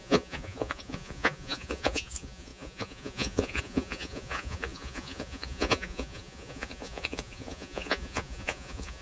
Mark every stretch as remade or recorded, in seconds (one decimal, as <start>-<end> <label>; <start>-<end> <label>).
0.0-9.0 remade